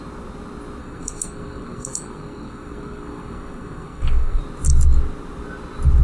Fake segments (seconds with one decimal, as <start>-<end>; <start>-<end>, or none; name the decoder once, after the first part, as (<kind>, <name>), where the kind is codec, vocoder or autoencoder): 0.8-4.4 (codec, SNAC)